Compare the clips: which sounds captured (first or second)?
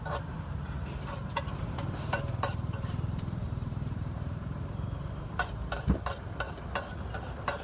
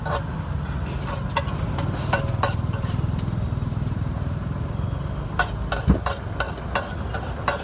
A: second